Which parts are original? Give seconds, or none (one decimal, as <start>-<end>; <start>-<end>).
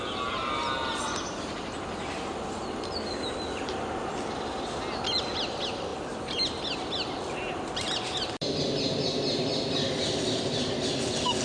0.0-11.4